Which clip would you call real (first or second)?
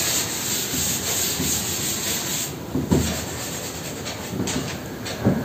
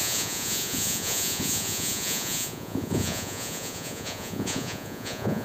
first